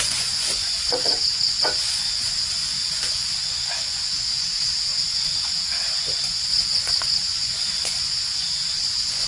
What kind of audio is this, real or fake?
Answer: fake